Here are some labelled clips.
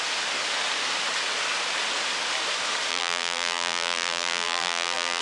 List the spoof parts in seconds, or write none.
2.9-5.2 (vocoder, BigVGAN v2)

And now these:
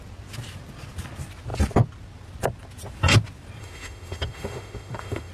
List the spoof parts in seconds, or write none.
3.6-5.3 (autoencoder, DAC-VAE)